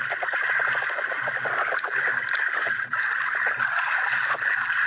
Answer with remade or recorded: recorded